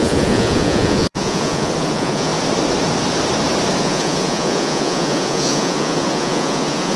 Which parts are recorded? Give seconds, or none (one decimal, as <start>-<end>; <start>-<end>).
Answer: 2.3-3.8